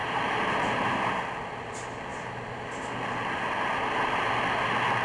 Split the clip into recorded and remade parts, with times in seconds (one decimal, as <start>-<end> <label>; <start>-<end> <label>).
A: 0.0-5.0 recorded